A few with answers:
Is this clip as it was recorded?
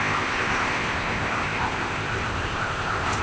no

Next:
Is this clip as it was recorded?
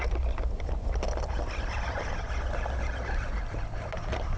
yes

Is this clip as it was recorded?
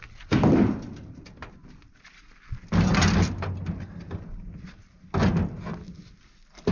yes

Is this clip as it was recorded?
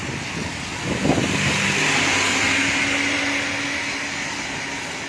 yes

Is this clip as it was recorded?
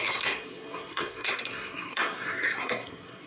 no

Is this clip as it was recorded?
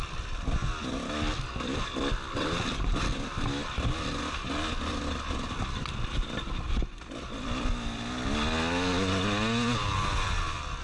yes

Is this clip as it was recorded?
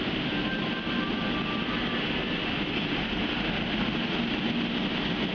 yes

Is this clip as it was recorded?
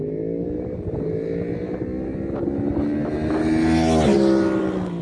yes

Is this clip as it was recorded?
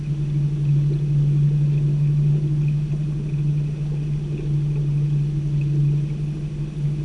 yes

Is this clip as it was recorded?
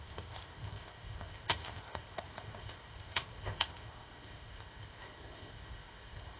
no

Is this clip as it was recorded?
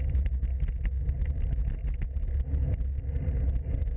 yes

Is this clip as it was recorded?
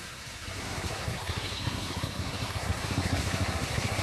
no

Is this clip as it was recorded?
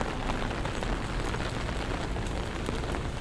yes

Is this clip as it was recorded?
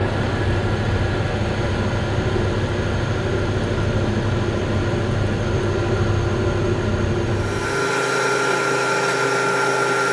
yes